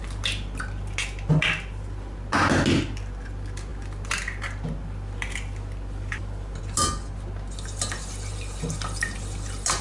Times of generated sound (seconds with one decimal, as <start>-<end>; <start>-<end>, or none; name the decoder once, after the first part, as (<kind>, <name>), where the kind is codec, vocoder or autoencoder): none